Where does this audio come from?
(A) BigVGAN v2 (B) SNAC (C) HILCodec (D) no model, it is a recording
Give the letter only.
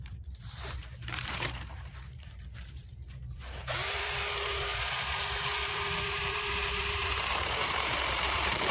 A